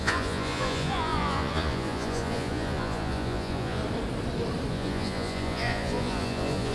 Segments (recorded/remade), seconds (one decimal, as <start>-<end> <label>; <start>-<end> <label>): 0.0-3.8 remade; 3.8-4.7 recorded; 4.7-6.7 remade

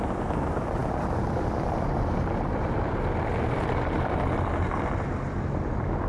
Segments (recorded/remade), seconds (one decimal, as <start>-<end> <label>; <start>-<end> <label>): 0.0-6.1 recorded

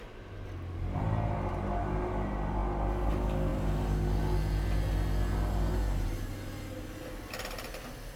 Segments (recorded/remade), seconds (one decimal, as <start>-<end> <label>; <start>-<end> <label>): 0.0-8.2 recorded

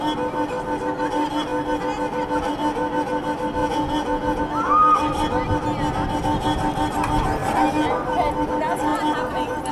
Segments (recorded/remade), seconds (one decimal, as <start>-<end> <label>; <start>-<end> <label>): 0.0-3.6 recorded; 3.6-4.4 remade; 4.4-9.7 recorded

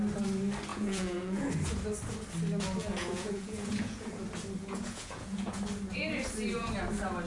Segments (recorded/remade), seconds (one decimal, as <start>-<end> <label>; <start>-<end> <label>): 0.0-0.7 recorded; 0.7-1.5 remade; 1.5-2.8 recorded; 2.8-4.1 remade; 4.1-4.6 recorded; 4.6-5.6 remade; 5.6-7.3 recorded